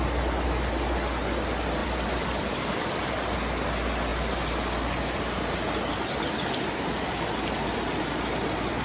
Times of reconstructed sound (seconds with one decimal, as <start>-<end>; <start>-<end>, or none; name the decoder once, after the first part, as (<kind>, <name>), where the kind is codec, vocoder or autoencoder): 1.8-2.9 (vocoder, BigVGAN v2)